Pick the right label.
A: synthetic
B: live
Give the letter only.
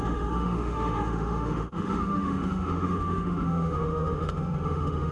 A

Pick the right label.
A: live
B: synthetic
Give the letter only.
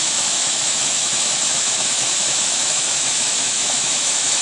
B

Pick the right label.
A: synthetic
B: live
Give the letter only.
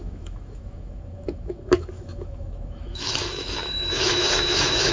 A